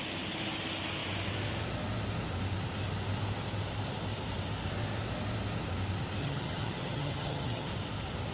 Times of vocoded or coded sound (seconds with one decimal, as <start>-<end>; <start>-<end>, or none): 6.2-7.7